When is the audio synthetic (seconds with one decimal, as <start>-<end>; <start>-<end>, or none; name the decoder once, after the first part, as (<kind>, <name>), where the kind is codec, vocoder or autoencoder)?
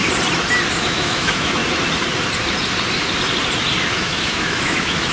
0.7-1.6 (autoencoder, DAC-VAE); 3.9-5.1